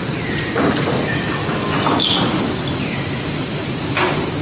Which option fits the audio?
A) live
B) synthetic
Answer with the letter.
A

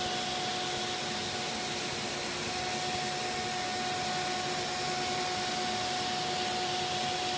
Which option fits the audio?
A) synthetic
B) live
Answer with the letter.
B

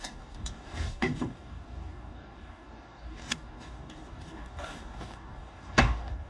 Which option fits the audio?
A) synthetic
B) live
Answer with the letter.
A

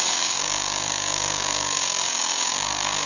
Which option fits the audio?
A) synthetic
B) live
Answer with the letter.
A